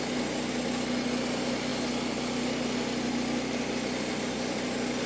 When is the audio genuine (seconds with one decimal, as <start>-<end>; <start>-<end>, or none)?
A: 0.0-5.1